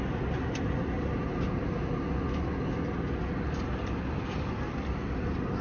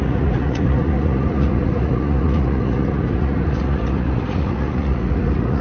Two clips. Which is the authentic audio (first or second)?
first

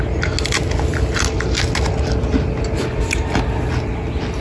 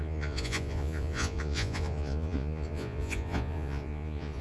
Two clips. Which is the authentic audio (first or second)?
first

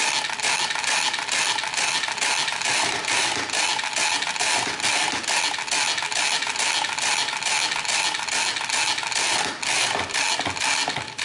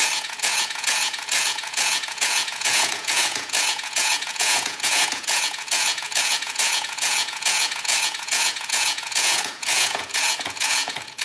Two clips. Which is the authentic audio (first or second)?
first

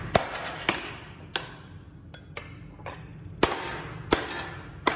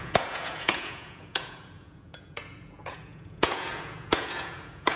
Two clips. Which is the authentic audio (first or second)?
first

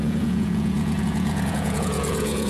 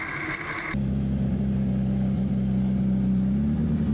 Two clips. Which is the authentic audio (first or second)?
second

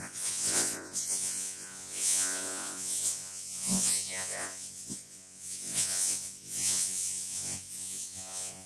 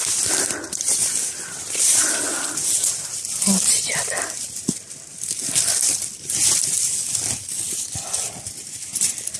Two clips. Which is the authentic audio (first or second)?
second